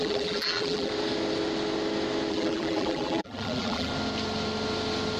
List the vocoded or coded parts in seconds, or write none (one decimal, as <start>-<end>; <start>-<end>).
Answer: 0.0-0.9; 2.3-3.9